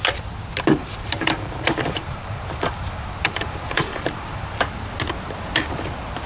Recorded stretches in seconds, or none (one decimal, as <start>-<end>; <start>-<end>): 0.0-0.8; 4.6-6.3